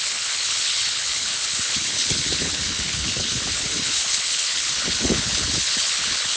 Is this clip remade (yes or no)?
yes